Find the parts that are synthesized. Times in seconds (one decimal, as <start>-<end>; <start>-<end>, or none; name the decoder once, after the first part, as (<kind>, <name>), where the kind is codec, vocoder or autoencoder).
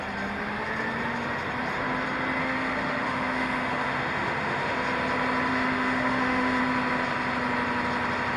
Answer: 2.4-4.8 (autoencoder, DAC-VAE); 5.5-6.6